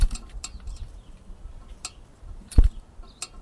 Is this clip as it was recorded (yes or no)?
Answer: yes